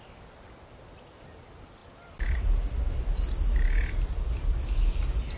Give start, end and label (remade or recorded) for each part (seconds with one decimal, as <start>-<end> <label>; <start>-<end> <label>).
0.0-5.4 recorded